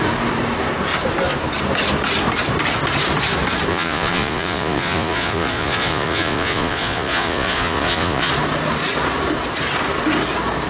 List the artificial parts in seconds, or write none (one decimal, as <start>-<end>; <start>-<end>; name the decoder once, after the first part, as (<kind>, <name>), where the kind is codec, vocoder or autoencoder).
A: 3.7-8.3 (vocoder, Vocos)